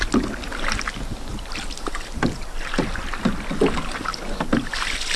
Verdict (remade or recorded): recorded